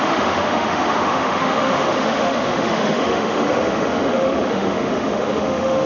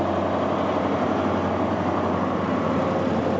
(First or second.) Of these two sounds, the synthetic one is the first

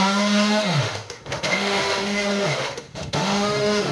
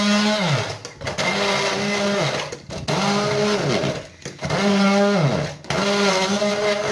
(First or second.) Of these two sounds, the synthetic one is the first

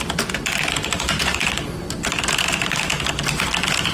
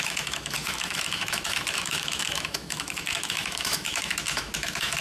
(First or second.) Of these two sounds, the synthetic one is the second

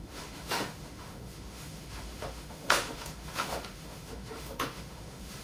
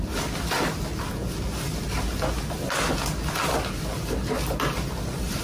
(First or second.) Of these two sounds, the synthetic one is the first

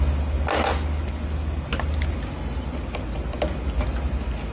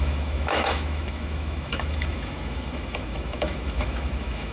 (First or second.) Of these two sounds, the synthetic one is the second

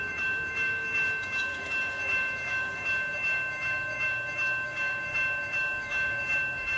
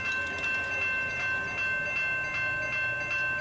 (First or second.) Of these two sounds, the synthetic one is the first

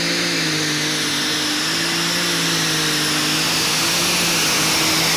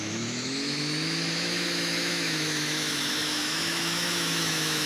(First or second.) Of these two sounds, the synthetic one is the second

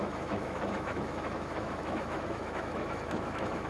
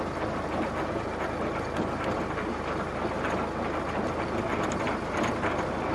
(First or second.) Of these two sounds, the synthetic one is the first